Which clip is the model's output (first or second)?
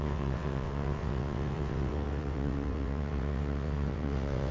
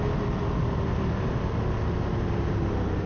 first